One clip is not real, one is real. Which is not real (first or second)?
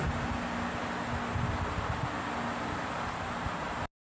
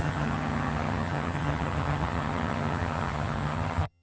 second